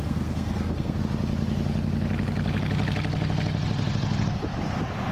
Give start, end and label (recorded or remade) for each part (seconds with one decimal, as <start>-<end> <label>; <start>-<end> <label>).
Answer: 0.0-1.0 remade; 1.0-5.1 recorded